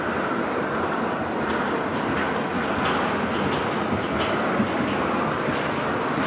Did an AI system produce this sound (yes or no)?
no